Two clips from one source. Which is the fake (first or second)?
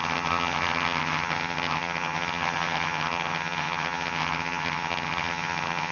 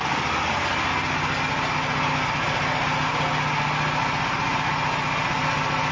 first